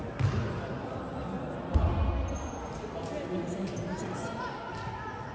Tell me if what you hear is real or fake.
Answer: real